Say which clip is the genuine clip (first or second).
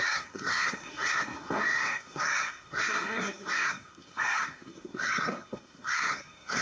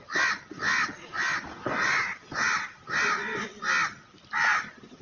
second